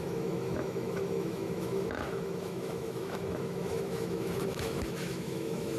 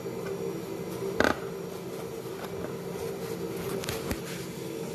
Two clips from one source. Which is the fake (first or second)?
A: first